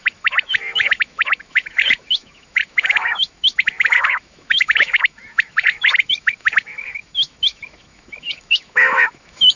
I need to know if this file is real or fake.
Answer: fake